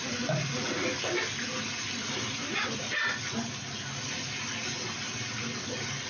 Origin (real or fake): real